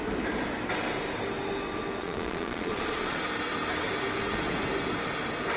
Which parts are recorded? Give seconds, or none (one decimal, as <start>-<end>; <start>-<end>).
0.0-2.0; 3.2-5.6